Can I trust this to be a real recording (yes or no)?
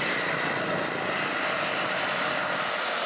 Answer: yes